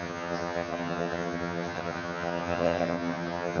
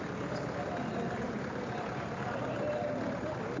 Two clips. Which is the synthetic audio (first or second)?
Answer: first